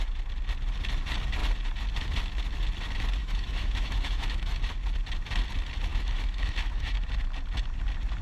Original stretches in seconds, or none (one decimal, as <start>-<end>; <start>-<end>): 0.0-3.2; 4.6-5.9; 7.1-8.2